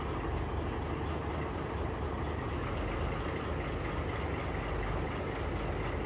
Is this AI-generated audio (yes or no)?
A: no